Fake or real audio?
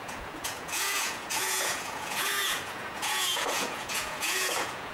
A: fake